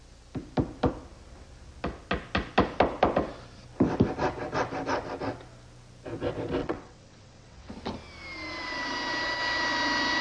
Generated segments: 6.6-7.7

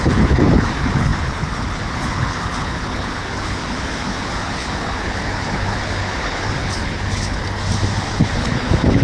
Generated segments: 0.0-7.4; 8.1-9.0